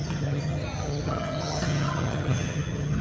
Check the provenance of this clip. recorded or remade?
remade